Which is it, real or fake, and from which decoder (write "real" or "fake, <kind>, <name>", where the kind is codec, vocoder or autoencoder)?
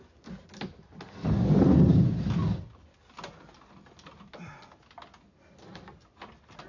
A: real